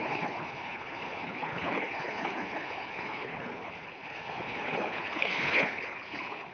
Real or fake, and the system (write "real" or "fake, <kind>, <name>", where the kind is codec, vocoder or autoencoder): fake, codec, HILCodec